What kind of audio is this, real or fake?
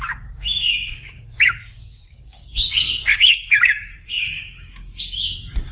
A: fake